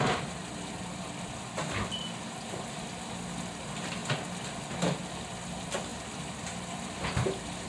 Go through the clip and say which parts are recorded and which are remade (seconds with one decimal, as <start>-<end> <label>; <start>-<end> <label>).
0.0-4.0 remade; 4.0-5.1 recorded; 5.1-7.7 remade